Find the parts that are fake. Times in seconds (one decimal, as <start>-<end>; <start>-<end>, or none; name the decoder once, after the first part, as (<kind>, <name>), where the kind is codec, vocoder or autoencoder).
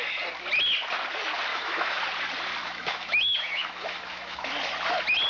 1.5-2.0 (autoencoder, DAC-VAE); 2.6-4.5